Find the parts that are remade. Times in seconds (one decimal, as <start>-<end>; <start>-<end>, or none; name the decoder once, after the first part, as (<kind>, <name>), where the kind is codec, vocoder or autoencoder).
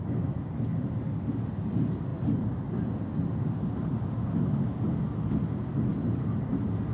2.1-3.0 (vocoder, BigVGAN v2); 5.9-6.5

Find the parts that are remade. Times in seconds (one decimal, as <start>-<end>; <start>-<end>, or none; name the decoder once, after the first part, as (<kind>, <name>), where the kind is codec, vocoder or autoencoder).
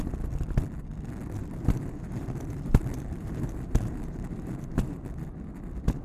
1.4-5.0 (vocoder, BigVGAN v2)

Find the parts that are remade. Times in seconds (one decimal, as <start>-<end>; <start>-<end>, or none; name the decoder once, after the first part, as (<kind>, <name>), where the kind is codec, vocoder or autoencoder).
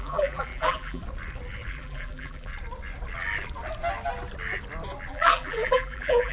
0.0-1.0 (vocoder, BigVGAN v2); 1.7-2.5; 5.1-6.3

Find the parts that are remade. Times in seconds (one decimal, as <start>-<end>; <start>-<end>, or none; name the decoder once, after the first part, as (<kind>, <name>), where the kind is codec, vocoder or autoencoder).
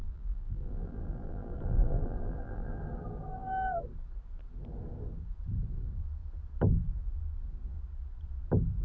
0.0-2.8 (vocoder, BigVGAN v2)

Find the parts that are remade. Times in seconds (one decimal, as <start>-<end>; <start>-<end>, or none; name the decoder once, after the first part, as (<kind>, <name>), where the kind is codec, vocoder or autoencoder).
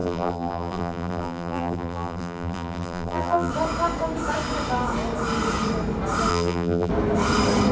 0.0-3.5 (vocoder, BigVGAN v2); 6.3-6.9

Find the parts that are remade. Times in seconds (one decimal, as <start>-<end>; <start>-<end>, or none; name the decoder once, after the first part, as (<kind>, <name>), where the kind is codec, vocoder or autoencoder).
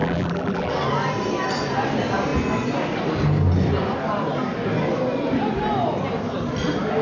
0.0-0.7 (vocoder, BigVGAN v2)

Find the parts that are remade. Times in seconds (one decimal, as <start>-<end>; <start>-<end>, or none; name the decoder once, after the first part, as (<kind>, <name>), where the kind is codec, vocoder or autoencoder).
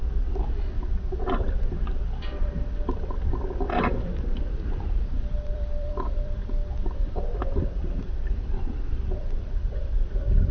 0.0-10.5 (vocoder, BigVGAN v2)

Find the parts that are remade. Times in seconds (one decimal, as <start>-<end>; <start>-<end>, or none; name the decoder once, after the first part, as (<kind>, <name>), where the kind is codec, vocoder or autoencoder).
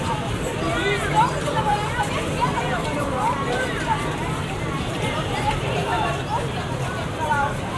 0.0-0.5 (vocoder, BigVGAN v2); 1.1-7.8